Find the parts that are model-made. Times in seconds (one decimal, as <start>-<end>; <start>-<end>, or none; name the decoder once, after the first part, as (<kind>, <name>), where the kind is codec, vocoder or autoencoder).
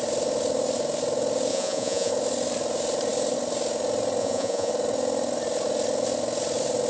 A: 1.5-2.1 (vocoder, Vocos); 4.2-4.7